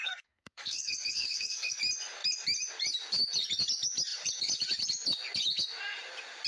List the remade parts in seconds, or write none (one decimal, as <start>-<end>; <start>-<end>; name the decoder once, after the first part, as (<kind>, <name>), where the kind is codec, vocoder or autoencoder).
0.0-1.8 (codec, SNAC)